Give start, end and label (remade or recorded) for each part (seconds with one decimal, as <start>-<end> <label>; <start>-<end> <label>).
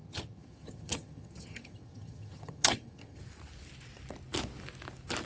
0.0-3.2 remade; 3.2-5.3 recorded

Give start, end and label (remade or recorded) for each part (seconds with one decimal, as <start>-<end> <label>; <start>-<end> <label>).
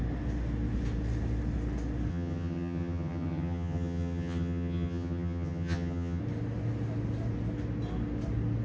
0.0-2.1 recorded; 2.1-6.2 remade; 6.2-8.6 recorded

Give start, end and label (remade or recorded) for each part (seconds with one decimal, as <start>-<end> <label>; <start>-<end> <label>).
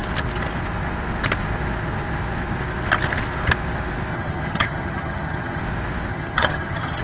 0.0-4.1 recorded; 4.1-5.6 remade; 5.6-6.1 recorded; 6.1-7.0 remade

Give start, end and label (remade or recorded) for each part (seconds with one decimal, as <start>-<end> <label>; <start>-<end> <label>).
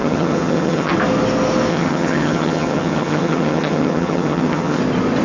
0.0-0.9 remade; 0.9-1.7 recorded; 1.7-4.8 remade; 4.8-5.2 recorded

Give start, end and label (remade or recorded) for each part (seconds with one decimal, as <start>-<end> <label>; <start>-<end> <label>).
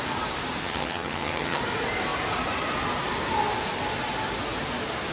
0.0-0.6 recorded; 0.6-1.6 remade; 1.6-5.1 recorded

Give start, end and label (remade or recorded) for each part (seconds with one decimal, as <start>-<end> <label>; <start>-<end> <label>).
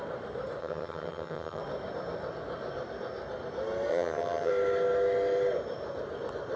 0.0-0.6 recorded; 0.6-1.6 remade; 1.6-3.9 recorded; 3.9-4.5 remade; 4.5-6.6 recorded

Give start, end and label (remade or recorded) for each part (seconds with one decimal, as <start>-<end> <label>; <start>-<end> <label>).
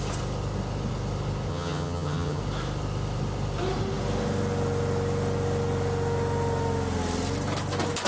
0.0-1.5 recorded; 1.5-2.4 remade; 2.4-8.1 recorded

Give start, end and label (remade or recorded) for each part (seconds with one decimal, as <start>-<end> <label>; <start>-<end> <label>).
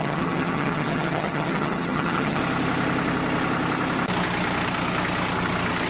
0.0-2.4 remade; 2.4-5.9 recorded